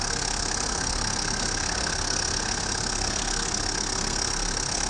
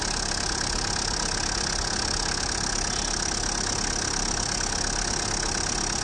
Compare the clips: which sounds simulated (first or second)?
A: first